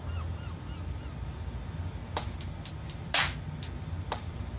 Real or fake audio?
real